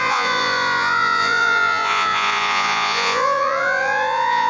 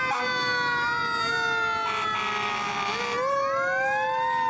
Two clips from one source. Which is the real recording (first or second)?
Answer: second